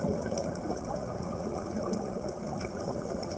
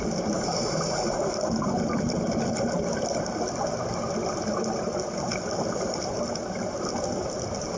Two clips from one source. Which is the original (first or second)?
second